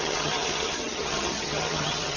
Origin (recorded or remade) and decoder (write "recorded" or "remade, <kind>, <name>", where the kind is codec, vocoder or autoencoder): remade, vocoder, HiFi-GAN